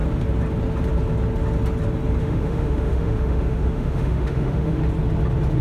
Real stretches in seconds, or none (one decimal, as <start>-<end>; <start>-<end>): 0.0-2.2; 4.8-5.6